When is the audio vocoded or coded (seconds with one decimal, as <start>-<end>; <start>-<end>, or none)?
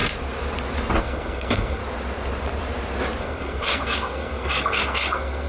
1.0-1.8; 3.2-5.5